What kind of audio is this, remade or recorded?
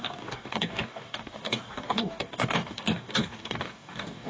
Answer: remade